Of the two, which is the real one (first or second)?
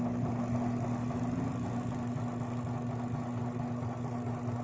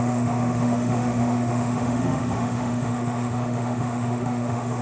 first